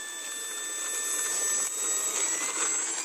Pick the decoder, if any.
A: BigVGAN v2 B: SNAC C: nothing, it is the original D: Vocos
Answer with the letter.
C